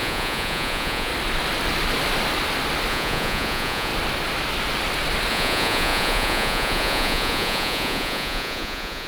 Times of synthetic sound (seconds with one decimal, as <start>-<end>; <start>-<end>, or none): 0.0-1.1; 2.9-3.9; 5.3-9.1